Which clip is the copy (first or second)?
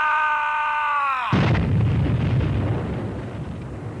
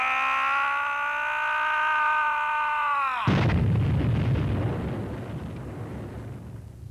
first